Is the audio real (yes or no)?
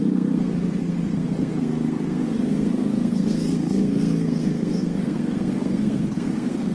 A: no